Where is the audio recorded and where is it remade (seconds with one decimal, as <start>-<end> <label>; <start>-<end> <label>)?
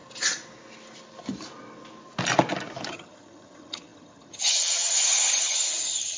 0.0-2.9 recorded; 2.9-6.2 remade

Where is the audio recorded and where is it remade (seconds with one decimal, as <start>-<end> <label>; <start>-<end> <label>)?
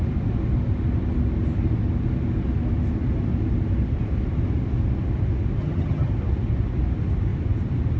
0.0-5.6 recorded; 5.6-6.1 remade; 6.1-8.0 recorded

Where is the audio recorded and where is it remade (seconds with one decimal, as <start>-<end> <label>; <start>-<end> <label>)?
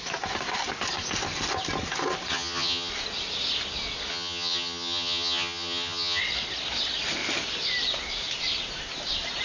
0.0-2.3 recorded; 2.3-2.9 remade; 2.9-4.1 recorded; 4.1-6.2 remade; 6.2-9.4 recorded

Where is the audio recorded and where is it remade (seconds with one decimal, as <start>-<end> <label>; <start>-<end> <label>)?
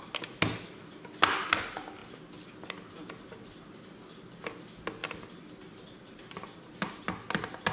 0.0-7.7 recorded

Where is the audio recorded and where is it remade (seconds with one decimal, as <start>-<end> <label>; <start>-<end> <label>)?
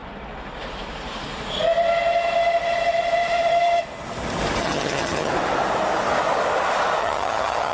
0.0-4.6 recorded; 4.6-5.3 remade; 5.3-7.0 recorded; 7.0-7.7 remade